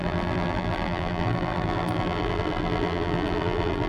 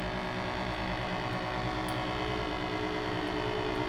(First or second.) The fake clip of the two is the first